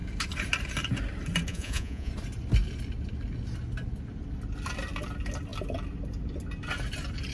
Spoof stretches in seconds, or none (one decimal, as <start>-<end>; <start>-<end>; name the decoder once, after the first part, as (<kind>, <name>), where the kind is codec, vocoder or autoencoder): 1.5-2.1 (vocoder, Vocos)